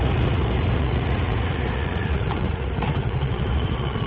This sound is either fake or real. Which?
fake